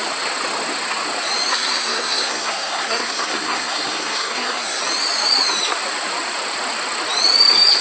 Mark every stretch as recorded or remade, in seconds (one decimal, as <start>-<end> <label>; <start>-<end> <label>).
0.0-1.5 recorded; 1.5-4.8 remade; 4.8-7.8 recorded